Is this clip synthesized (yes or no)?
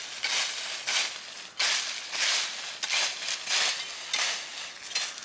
no